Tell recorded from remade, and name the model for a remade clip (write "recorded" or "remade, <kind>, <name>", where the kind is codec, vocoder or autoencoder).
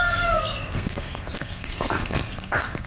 remade, codec, SNAC